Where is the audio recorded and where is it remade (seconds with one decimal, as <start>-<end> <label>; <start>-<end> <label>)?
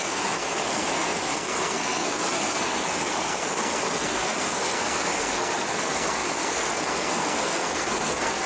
0.0-8.5 remade